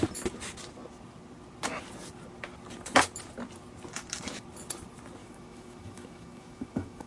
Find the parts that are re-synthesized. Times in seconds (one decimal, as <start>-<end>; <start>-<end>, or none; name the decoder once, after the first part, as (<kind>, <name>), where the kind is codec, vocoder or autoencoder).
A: 5.2-7.1 (autoencoder, DAC-VAE)